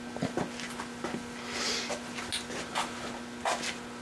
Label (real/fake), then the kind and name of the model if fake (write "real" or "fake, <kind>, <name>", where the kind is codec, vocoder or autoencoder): real